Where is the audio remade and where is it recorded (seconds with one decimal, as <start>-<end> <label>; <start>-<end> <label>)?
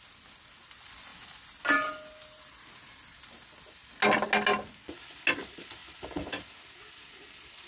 0.0-7.7 recorded